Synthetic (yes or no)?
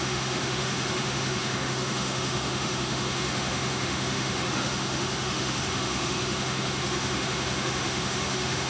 yes